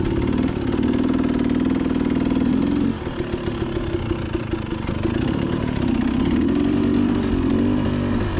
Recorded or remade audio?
recorded